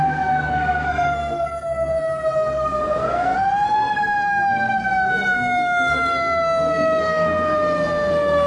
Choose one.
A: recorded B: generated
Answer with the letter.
B